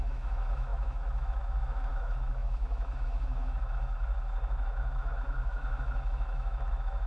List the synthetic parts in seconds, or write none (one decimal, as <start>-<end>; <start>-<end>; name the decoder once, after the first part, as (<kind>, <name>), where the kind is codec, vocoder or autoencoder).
0.0-7.1 (autoencoder, DAC-VAE)